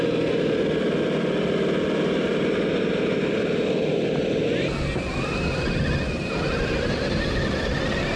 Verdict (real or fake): real